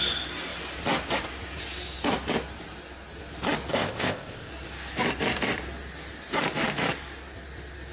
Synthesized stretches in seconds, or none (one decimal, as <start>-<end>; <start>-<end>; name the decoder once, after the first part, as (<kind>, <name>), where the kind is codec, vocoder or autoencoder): 3.7-4.5 (codec, ZipCodec)